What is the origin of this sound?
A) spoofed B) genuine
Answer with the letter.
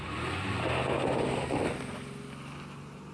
B